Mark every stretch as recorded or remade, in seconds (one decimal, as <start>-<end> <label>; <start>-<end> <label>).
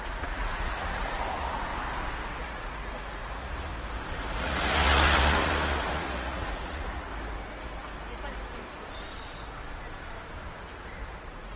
0.0-1.7 remade; 1.7-2.4 recorded; 2.4-3.7 remade; 3.7-4.4 recorded; 4.4-7.1 remade; 7.1-11.2 recorded; 11.2-11.6 remade